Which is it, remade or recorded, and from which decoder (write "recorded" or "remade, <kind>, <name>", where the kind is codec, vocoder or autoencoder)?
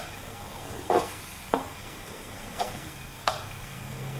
remade, codec, SNAC